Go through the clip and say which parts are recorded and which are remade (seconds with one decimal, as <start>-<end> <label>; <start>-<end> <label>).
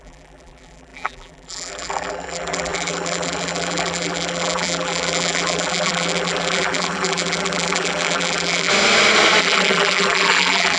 0.0-8.7 remade; 8.7-9.4 recorded; 9.4-10.8 remade